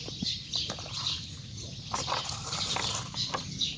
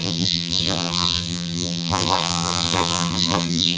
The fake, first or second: second